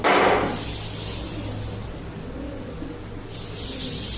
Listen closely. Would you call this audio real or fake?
real